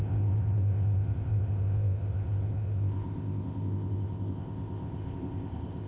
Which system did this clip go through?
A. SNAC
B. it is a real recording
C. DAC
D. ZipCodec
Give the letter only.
D